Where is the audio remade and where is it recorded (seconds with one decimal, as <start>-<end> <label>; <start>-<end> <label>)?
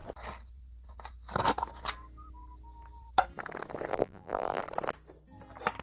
0.0-3.9 recorded; 3.9-4.6 remade; 4.6-5.8 recorded